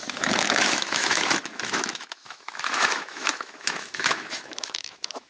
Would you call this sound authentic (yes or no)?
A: no